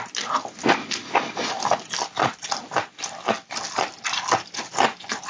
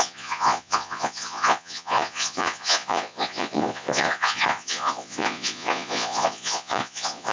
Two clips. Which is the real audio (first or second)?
first